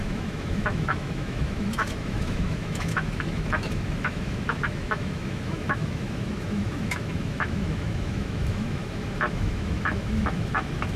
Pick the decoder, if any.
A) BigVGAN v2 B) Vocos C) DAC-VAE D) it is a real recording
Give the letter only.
C